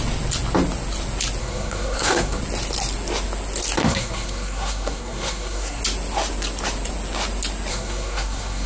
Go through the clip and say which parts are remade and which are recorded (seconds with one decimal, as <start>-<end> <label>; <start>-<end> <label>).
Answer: 0.0-1.4 recorded; 1.4-2.4 remade; 2.4-3.8 recorded; 3.8-5.8 remade; 5.8-7.7 recorded; 7.7-8.7 remade